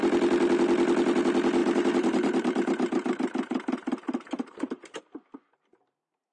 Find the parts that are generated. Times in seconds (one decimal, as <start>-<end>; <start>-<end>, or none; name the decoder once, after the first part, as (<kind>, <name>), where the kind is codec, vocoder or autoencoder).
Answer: 1.6-5.0 (vocoder, BigVGAN v2)